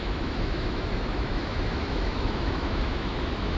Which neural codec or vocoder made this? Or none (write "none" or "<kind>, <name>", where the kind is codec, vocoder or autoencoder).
autoencoder, DAC-VAE